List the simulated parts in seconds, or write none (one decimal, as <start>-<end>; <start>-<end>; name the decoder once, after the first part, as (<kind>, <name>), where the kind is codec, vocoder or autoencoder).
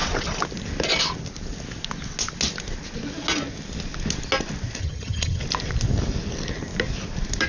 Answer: 4.8-5.4 (vocoder, HiFi-GAN)